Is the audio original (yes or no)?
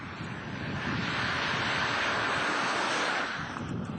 yes